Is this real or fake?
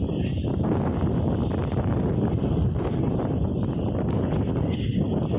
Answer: real